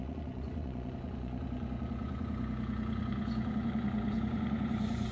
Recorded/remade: remade